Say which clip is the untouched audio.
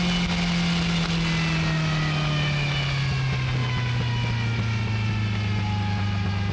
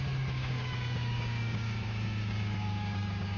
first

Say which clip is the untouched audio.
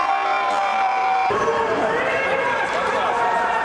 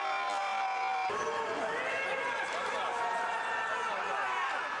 second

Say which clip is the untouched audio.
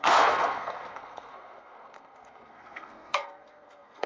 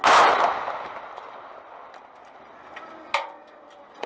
second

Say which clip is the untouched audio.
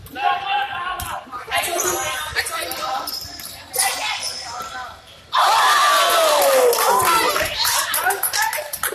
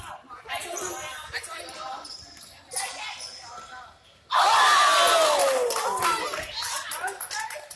second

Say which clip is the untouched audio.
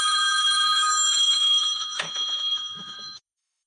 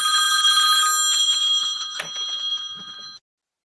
second